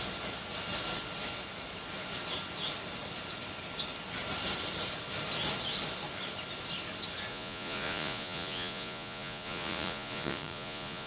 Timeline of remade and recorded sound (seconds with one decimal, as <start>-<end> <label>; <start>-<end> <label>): 0.0-7.3 recorded; 7.3-11.1 remade